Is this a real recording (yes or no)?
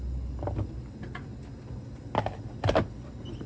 yes